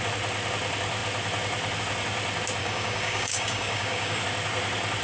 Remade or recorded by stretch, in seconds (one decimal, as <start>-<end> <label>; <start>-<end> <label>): 0.0-2.6 recorded; 2.6-4.2 remade; 4.2-5.0 recorded